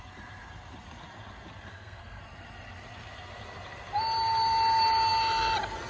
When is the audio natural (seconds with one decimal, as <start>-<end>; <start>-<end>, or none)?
0.0-1.7; 2.2-5.9